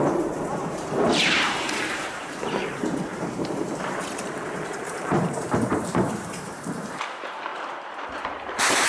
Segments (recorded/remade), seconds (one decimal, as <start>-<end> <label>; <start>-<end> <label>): 0.0-8.9 remade